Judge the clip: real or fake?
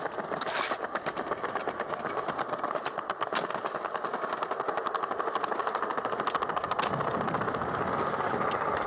real